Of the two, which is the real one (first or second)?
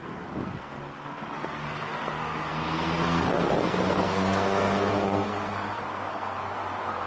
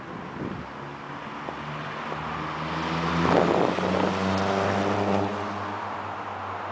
second